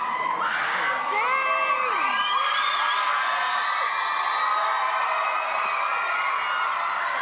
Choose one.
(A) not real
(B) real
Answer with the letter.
B